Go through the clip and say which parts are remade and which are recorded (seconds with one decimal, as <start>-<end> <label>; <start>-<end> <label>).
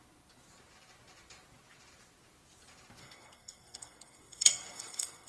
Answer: 0.0-3.0 recorded; 3.0-5.3 remade